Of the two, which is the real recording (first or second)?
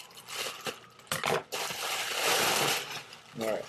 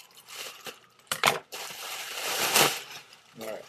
first